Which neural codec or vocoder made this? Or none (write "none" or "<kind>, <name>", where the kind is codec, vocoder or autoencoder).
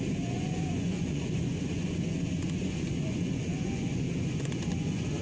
vocoder, Vocos